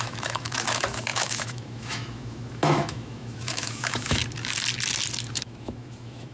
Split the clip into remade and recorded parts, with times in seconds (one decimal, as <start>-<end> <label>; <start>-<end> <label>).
0.0-4.2 remade; 4.2-5.3 recorded; 5.3-6.3 remade